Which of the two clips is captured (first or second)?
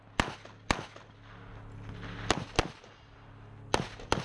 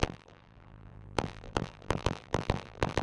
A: first